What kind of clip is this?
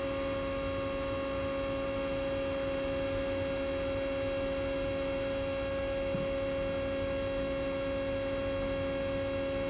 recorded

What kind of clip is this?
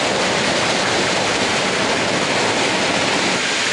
recorded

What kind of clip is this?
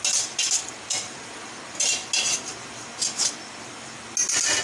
recorded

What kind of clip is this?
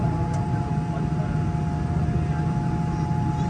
recorded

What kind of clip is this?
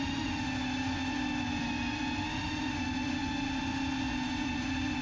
recorded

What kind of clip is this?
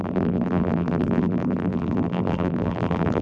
remade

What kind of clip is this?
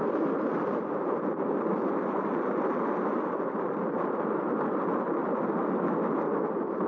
recorded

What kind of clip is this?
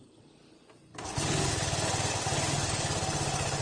recorded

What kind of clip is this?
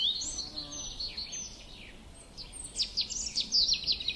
recorded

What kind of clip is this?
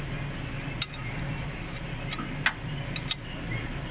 recorded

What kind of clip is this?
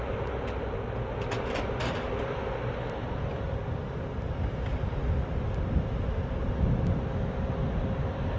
recorded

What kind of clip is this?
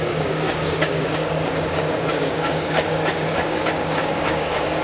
remade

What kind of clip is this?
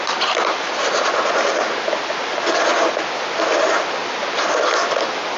recorded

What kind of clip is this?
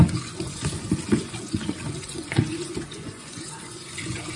remade